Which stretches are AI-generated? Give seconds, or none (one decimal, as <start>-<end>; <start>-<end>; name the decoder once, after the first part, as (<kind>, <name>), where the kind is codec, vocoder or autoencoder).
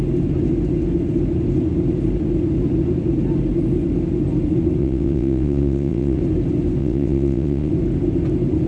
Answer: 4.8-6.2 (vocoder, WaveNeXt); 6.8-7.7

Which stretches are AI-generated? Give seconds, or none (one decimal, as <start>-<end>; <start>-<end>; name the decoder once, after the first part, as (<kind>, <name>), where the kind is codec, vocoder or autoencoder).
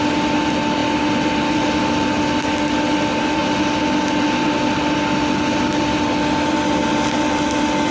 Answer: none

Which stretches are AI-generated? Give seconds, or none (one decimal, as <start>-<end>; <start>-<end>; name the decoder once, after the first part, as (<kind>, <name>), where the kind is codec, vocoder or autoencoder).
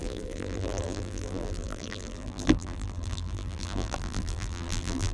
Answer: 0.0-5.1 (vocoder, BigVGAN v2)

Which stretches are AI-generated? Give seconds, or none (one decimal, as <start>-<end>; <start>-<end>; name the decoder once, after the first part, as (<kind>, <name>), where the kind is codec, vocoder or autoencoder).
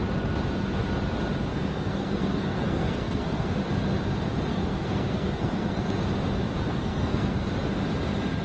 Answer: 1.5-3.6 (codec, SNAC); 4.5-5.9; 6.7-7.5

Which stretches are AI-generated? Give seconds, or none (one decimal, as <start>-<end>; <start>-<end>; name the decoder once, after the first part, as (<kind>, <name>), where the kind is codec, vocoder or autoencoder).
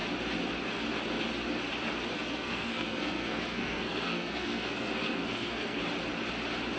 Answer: 2.1-5.8 (codec, SNAC)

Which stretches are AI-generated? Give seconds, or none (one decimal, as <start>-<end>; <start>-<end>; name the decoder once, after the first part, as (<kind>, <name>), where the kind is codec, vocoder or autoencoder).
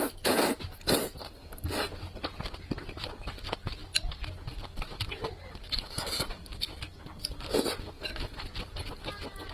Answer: none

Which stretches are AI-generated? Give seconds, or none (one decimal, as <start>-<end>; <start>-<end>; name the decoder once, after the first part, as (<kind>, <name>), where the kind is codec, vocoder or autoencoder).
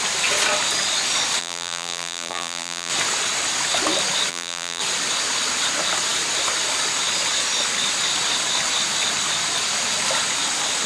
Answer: 1.4-2.9 (vocoder, BigVGAN v2); 4.3-4.8